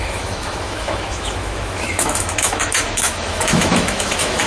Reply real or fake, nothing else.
fake